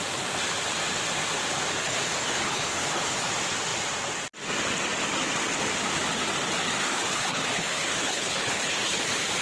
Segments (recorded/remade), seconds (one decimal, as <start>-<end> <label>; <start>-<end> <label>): 0.0-1.8 recorded; 1.8-3.3 remade; 3.3-6.8 recorded; 6.8-9.0 remade; 9.0-9.4 recorded